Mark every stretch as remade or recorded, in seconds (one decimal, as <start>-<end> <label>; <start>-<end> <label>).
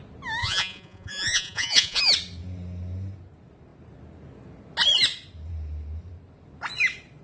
0.0-0.4 recorded; 0.4-2.0 remade; 2.0-7.2 recorded